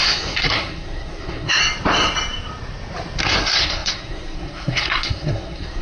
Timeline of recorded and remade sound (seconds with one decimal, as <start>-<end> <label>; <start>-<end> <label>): 0.0-1.6 remade; 1.6-3.2 recorded; 3.2-5.8 remade